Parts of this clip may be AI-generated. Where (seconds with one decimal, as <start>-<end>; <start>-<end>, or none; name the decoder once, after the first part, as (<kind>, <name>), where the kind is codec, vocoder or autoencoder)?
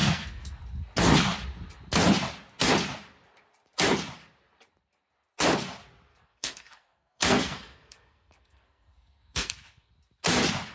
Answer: 0.0-0.6 (codec, SNAC); 6.1-9.9